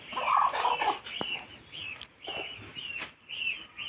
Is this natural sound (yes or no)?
yes